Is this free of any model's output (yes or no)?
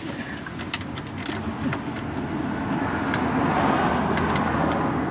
yes